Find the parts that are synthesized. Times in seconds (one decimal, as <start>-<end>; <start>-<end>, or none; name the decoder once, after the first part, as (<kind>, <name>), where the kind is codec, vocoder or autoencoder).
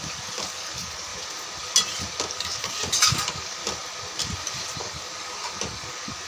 0.0-1.1 (codec, DAC); 2.3-3.6; 4.8-6.3